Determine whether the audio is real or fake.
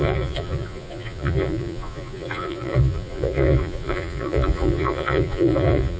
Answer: fake